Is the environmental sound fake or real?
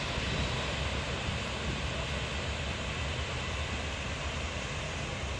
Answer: real